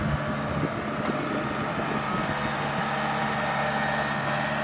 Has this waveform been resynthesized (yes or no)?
no